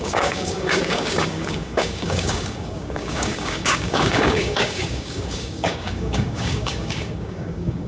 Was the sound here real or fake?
fake